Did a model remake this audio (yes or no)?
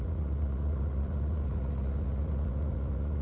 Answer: yes